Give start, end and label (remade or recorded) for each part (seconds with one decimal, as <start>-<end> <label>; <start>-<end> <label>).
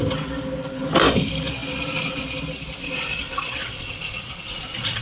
0.0-2.8 recorded; 2.8-5.0 remade